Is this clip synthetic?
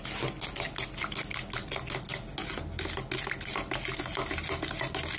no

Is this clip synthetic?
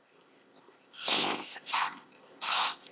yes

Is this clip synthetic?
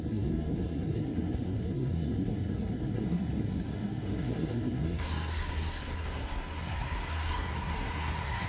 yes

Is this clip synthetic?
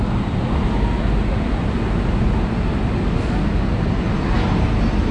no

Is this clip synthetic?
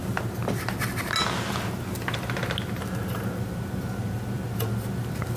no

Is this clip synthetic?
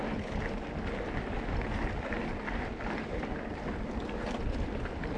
no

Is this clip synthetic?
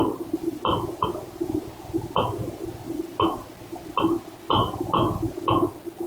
no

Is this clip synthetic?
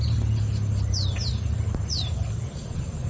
no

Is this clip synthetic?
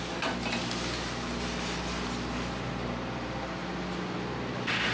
no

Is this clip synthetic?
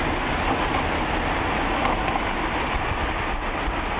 no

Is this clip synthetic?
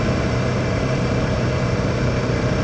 yes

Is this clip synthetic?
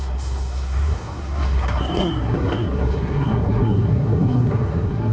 yes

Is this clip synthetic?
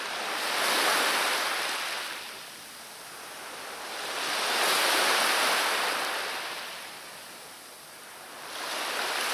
no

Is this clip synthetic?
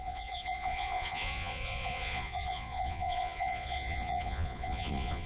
yes